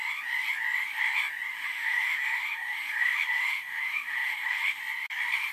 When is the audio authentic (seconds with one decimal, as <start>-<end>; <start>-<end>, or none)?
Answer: 0.0-1.5; 4.8-5.5